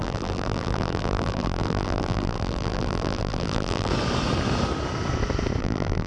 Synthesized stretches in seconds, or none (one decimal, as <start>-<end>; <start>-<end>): 0.0-3.9; 5.6-6.1